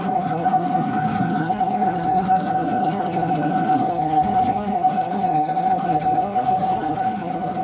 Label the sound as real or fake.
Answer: fake